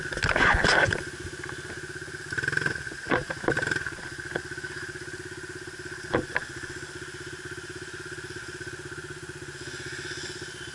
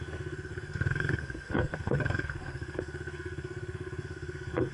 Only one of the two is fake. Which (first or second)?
second